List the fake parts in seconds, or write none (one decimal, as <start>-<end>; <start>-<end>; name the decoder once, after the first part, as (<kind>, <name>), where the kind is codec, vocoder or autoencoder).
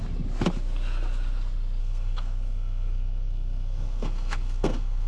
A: 1.8-5.1 (codec, SNAC)